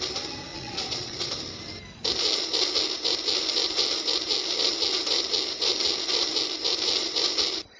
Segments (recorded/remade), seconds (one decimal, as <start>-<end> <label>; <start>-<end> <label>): 0.0-0.5 recorded; 0.5-1.3 remade; 1.3-7.8 recorded